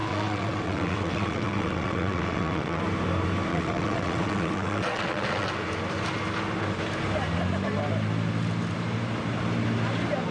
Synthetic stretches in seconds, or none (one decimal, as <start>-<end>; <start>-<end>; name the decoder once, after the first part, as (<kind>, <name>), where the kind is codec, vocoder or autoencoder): 0.0-2.8 (vocoder, WaveNeXt); 3.5-5.5